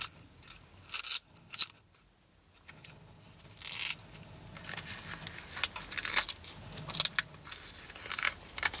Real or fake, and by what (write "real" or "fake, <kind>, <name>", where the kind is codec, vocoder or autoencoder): real